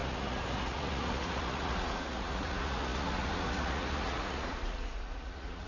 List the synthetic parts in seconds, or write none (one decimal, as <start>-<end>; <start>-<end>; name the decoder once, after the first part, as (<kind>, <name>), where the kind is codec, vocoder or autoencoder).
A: 0.0-5.7 (vocoder, Vocos)